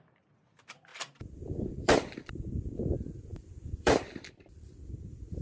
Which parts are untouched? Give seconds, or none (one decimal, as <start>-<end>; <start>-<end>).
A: 0.0-0.9; 2.4-3.3